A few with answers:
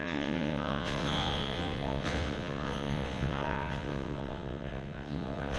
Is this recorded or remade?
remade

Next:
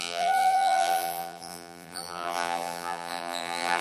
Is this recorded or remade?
remade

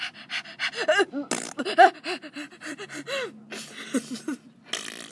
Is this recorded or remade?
recorded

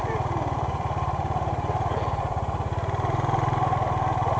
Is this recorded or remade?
remade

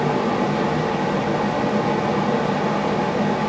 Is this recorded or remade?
recorded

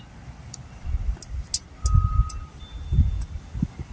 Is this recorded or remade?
recorded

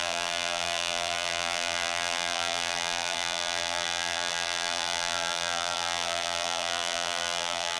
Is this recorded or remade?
remade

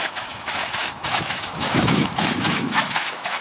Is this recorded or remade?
remade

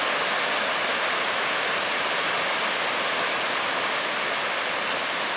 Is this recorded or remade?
recorded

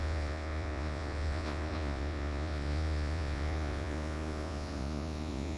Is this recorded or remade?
remade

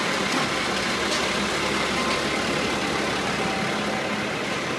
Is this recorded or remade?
recorded